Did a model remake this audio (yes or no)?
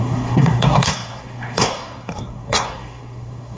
yes